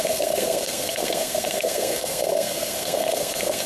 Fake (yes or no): yes